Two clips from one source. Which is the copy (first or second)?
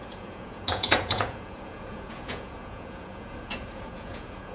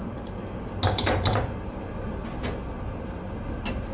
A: first